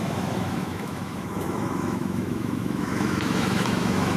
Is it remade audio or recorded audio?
remade